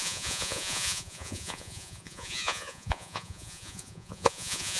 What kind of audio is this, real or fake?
fake